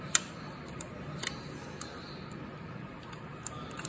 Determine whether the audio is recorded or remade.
recorded